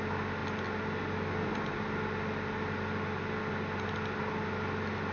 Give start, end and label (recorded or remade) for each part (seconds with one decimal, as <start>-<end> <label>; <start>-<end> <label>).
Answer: 0.0-5.1 recorded